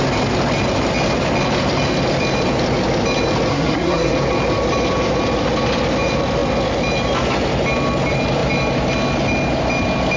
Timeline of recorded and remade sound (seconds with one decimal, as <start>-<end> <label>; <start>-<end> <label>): 0.0-3.5 recorded; 3.5-4.1 remade; 4.1-10.2 recorded

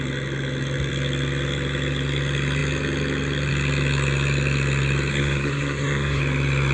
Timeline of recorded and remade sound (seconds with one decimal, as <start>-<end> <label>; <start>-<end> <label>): 0.0-5.1 recorded; 5.1-6.2 remade; 6.2-6.7 recorded

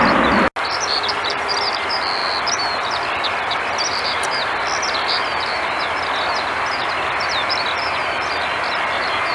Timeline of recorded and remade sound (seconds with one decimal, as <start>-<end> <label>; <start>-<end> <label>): 0.0-9.3 recorded

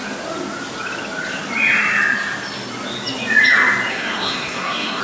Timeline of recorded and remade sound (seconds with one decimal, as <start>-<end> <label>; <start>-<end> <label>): 0.0-3.9 recorded; 3.9-5.0 remade

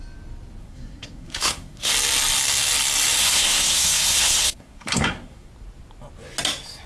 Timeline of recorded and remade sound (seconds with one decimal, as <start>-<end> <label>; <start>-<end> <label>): 0.0-0.6 recorded; 0.6-1.9 remade; 1.9-3.2 recorded; 3.2-5.5 remade; 5.5-6.9 recorded

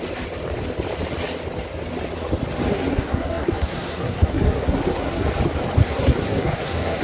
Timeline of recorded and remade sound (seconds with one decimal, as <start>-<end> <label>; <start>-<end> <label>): 0.0-2.7 recorded; 2.7-5.3 remade; 5.3-5.8 recorded; 5.8-7.0 remade